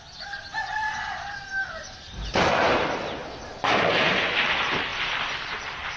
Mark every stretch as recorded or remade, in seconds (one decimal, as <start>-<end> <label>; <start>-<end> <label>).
0.0-3.2 remade; 3.2-4.5 recorded; 4.5-6.0 remade